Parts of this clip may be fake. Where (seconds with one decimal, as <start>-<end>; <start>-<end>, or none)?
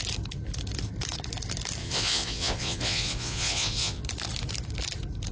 1.8-4.0